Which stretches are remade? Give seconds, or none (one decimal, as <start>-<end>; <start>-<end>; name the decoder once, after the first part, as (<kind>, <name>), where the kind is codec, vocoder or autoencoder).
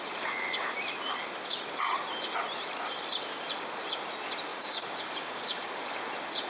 4.5-5.8 (codec, DAC)